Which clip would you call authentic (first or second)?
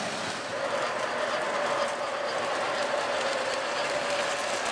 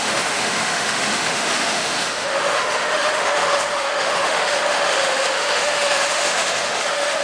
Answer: first